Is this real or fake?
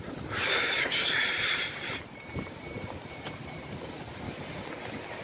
fake